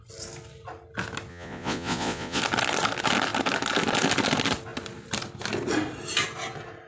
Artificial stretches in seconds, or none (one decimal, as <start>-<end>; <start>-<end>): 1.3-2.4

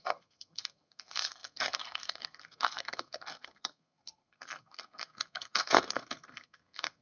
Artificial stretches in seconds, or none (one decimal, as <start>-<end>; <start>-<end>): 0.0-7.0

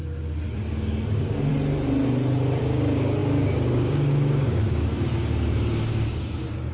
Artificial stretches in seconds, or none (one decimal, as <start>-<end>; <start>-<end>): 0.5-1.5; 2.6-6.7

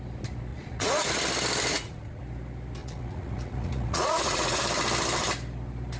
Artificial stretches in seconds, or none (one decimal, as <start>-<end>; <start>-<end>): 0.5-1.1; 1.7-2.2; 2.8-4.6

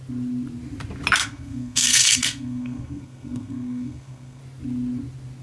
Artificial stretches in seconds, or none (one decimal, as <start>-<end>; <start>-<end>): 1.2-4.4

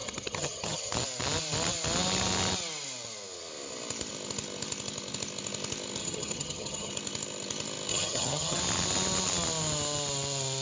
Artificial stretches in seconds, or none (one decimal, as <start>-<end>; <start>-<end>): 0.0-0.9; 6.0-6.9; 7.9-8.6

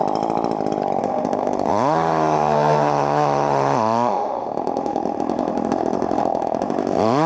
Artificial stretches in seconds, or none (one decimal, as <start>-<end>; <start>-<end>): 1.0-7.3

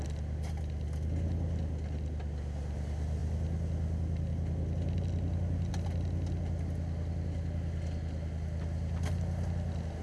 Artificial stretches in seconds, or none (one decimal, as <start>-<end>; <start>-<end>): none